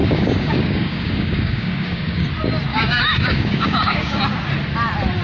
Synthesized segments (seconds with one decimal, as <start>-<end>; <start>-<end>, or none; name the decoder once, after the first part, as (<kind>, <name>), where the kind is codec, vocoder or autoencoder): 0.0-2.3 (codec, DAC); 2.7-4.2